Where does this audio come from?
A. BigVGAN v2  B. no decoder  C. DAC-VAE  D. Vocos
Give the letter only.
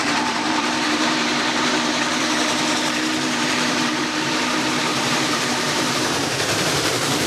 A